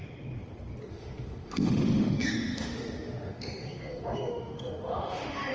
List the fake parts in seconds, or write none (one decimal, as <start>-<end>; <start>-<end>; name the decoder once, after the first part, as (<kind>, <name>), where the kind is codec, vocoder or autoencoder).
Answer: 0.9-5.5 (autoencoder, DAC-VAE)